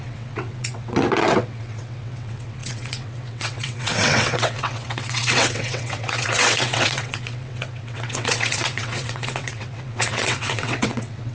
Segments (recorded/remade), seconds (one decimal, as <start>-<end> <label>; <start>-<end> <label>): 0.0-11.3 remade